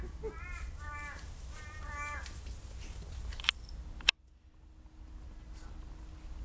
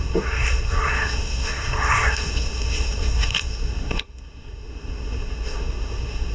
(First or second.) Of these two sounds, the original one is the first